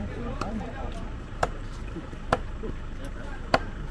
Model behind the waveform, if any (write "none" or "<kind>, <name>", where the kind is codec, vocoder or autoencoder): vocoder, BigVGAN v2